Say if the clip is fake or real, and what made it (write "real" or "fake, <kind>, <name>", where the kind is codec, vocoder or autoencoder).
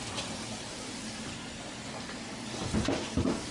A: real